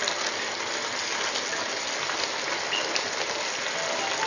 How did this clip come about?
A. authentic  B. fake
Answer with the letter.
A